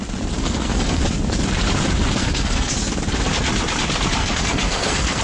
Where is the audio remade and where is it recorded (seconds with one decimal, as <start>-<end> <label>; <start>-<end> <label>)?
0.0-0.4 recorded; 0.4-1.0 remade; 1.0-2.2 recorded; 2.2-2.7 remade; 2.7-4.2 recorded; 4.2-5.2 remade